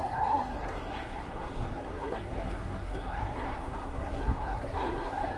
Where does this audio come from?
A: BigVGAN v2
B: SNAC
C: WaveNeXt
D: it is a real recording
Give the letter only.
B